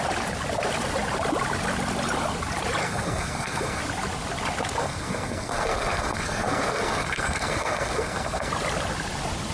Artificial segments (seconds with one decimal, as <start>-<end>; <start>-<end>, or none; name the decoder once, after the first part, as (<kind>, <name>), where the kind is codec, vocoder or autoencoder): 2.8-3.8 (codec, SNAC); 4.8-8.5